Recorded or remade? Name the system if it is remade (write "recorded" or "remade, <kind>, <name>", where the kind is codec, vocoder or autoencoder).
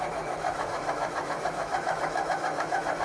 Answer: remade, autoencoder, DAC-VAE